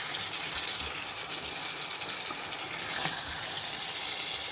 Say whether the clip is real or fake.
real